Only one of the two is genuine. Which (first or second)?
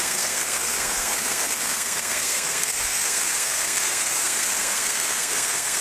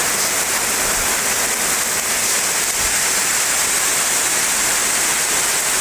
second